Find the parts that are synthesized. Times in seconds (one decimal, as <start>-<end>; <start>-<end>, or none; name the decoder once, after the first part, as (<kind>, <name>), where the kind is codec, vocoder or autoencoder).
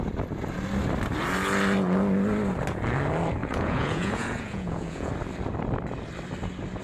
3.4-5.1 (vocoder, Vocos)